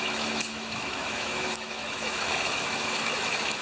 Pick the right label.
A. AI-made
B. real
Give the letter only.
A